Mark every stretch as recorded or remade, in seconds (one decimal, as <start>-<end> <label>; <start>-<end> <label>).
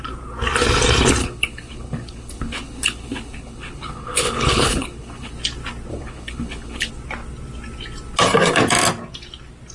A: 0.0-1.2 recorded; 1.2-5.3 remade; 5.3-5.9 recorded; 5.9-6.9 remade; 6.9-9.7 recorded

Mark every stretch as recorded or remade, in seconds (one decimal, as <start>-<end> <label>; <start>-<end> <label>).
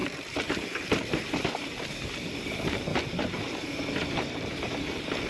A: 0.0-5.3 remade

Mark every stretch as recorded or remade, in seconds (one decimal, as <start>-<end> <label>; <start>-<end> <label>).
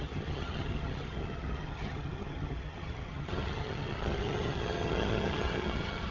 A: 0.0-6.1 remade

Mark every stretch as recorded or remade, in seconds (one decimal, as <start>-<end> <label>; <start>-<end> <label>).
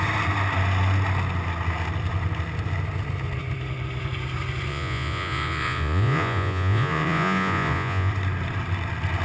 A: 0.0-4.7 recorded; 4.7-8.1 remade; 8.1-9.2 recorded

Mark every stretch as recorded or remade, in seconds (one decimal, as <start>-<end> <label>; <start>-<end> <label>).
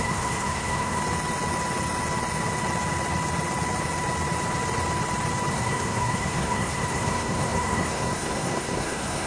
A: 0.0-1.0 remade; 1.0-5.5 recorded; 5.5-9.3 remade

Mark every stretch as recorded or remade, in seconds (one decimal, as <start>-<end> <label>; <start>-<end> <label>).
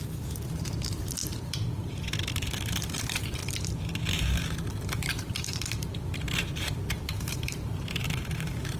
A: 0.0-3.4 remade; 3.4-4.1 recorded; 4.1-8.8 remade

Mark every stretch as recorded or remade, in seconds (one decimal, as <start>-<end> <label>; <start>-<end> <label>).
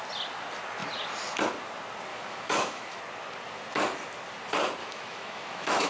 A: 0.0-2.1 recorded; 2.1-3.0 remade; 3.0-4.8 recorded; 4.8-5.9 remade